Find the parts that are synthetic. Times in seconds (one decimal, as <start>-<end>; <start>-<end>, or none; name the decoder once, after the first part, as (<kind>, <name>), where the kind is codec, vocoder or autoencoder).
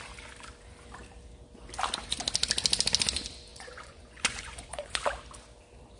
3.5-5.0 (vocoder, Vocos)